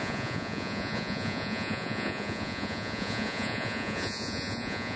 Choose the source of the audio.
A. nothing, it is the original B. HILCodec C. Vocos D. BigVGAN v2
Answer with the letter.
C